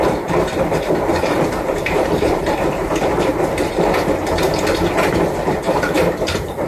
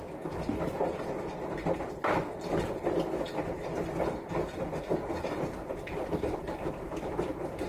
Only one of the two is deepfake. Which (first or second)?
first